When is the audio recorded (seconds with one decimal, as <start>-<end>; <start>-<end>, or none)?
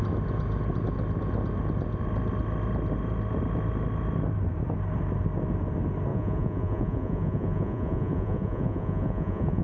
0.0-6.1